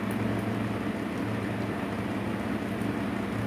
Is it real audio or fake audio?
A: real